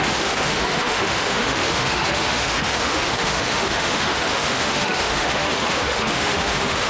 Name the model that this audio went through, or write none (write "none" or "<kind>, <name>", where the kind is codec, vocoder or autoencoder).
autoencoder, DAC-VAE